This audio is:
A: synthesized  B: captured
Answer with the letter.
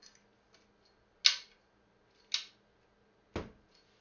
B